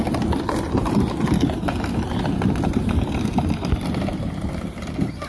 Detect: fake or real real